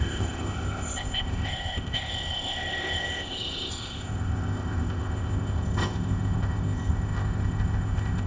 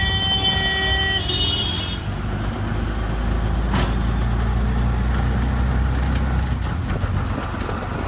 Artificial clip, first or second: first